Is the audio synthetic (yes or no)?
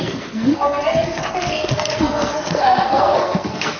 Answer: yes